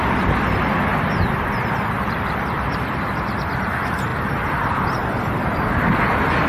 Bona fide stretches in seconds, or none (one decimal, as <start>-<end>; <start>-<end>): 0.0-6.5